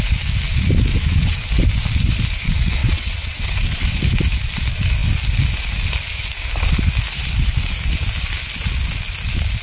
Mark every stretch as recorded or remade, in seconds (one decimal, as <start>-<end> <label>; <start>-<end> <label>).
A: 0.0-0.9 recorded; 0.9-1.4 remade; 1.4-2.8 recorded; 2.8-4.0 remade; 4.0-9.6 recorded